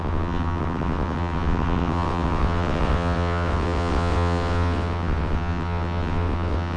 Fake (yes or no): yes